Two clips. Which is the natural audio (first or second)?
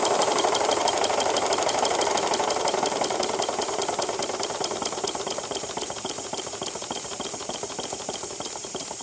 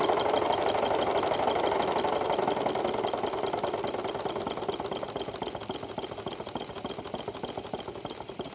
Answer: second